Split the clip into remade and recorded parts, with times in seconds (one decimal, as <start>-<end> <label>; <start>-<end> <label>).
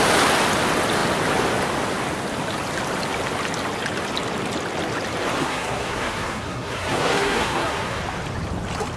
0.0-5.4 recorded; 5.4-8.0 remade; 8.0-9.0 recorded